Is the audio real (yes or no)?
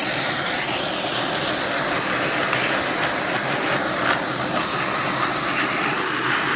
no